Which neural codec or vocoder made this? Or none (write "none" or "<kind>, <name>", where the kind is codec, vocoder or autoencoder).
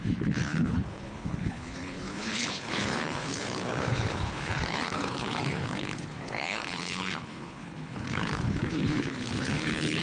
codec, HILCodec